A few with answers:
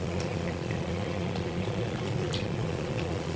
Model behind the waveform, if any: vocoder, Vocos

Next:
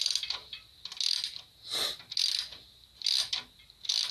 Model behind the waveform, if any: none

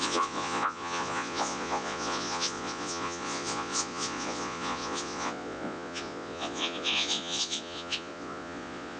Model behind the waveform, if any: vocoder, Vocos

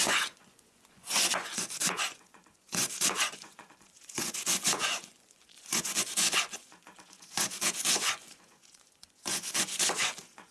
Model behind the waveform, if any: vocoder, Vocos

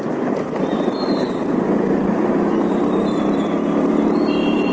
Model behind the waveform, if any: none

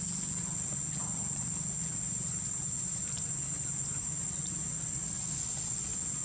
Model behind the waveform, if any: none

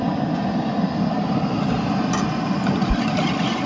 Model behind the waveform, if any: none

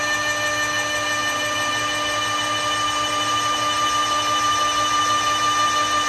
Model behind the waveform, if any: none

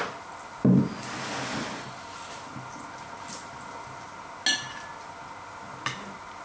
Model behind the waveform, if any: none